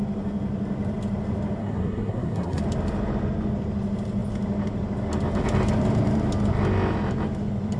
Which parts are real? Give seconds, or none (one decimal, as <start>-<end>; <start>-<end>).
0.0-1.6; 2.6-7.8